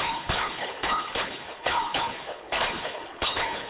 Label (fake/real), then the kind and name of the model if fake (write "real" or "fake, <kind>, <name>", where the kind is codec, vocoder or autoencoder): fake, codec, HILCodec